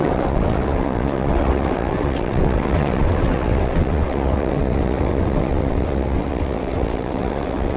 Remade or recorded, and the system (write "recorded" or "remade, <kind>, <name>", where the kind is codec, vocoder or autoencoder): remade, vocoder, WaveNeXt